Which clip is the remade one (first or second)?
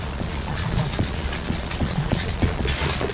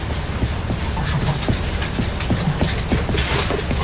first